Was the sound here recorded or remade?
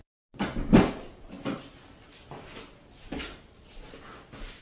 recorded